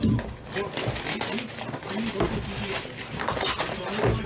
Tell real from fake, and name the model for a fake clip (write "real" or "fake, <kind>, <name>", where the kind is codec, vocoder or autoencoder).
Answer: real